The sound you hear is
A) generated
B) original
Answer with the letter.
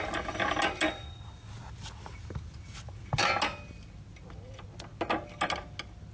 B